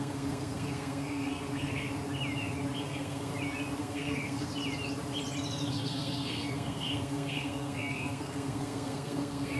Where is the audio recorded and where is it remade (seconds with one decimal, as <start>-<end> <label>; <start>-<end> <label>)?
0.0-1.9 remade; 1.9-2.8 recorded; 2.8-3.3 remade; 3.3-3.8 recorded; 3.8-4.5 remade; 4.5-5.7 recorded; 5.7-9.6 remade